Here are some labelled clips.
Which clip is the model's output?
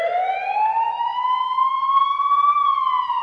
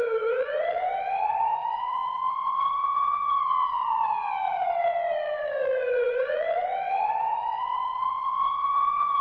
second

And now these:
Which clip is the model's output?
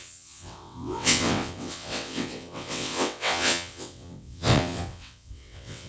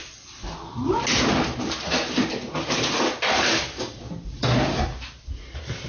first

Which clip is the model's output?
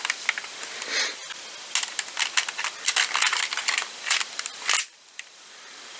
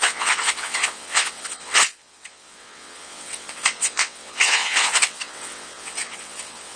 second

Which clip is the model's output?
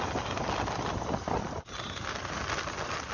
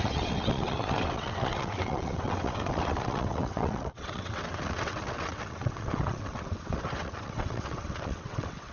second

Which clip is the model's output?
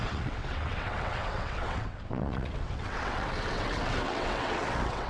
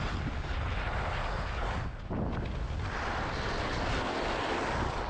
first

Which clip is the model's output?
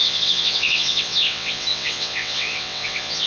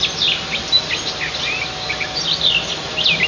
first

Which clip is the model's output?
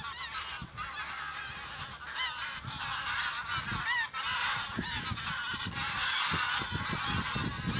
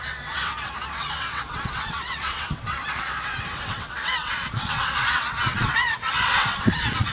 second